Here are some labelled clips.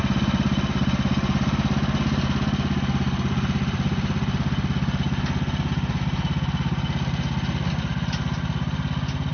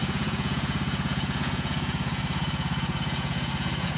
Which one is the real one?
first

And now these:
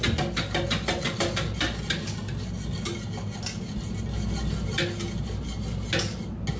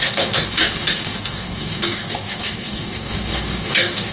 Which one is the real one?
first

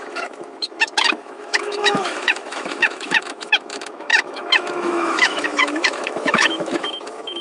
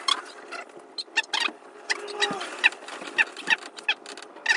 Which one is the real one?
second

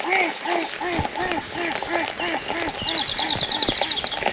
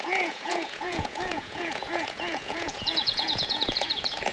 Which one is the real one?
first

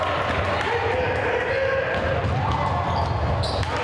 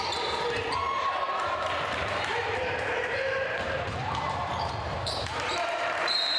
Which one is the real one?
first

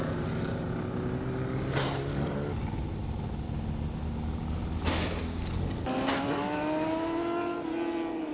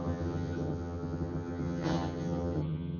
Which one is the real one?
first